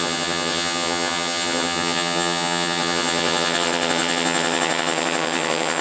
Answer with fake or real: fake